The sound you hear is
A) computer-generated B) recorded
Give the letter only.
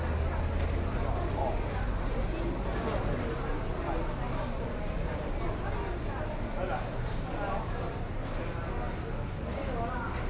B